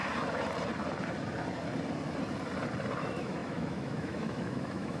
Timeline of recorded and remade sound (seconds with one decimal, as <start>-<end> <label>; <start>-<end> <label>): 0.0-3.0 recorded; 3.0-5.0 remade